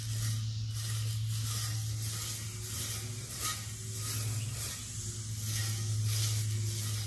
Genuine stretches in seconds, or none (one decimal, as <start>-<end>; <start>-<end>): 0.0-7.1